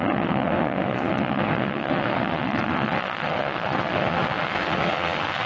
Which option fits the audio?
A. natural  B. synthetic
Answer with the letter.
B